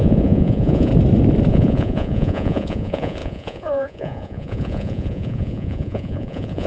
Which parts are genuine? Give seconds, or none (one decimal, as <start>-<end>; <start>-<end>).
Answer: 0.9-1.5